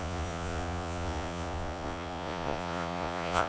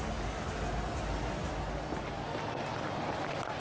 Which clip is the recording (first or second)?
second